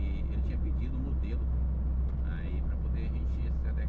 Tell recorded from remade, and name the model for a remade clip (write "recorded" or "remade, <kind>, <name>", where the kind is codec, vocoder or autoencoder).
recorded